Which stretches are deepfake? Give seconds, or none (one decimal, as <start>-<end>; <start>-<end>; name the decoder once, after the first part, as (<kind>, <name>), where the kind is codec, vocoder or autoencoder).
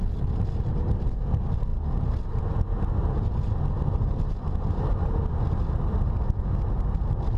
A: none